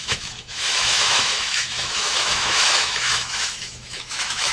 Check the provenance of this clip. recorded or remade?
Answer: remade